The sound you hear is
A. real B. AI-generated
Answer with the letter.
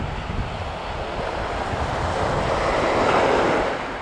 A